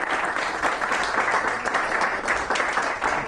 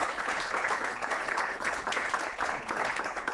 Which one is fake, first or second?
second